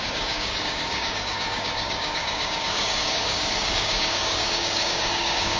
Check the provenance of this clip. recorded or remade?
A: remade